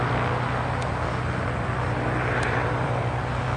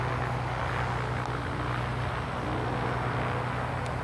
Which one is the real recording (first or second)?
second